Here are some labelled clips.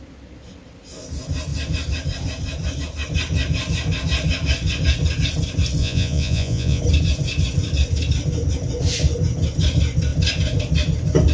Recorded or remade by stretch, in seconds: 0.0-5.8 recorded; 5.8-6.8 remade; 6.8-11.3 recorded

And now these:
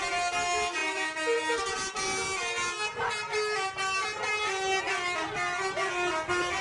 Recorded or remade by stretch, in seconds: 0.0-6.6 recorded

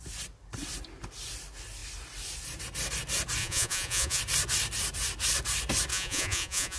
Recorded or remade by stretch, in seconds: 0.0-3.4 recorded; 3.4-4.2 remade; 4.2-5.9 recorded; 5.9-6.8 remade

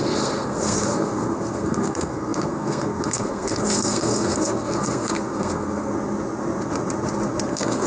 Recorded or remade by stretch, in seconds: 0.0-5.9 remade; 5.9-7.5 recorded; 7.5-7.9 remade

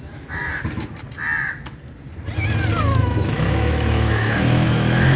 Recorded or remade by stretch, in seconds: 0.0-2.9 recorded; 2.9-5.2 remade